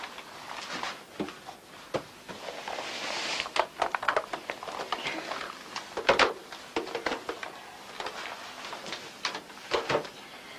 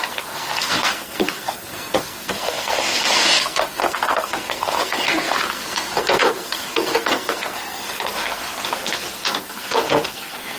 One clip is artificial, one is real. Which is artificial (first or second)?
second